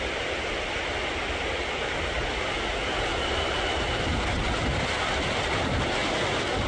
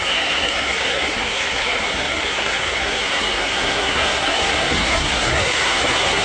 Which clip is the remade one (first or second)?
second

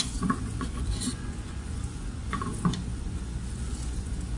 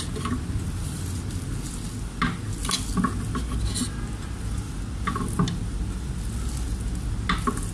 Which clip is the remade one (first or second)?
first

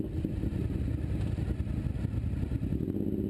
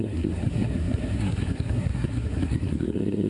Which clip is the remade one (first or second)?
second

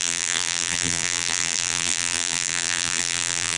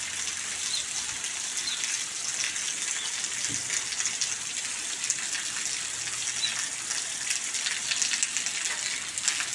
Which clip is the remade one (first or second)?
first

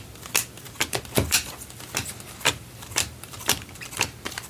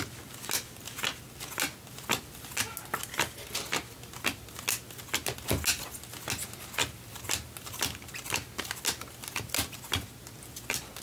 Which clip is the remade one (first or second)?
first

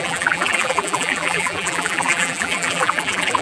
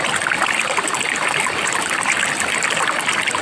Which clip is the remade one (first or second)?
first